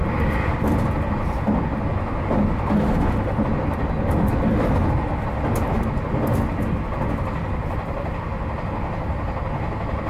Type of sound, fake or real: real